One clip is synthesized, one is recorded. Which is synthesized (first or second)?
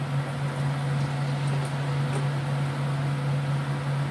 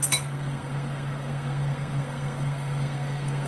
second